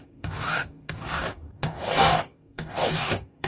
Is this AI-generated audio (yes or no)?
yes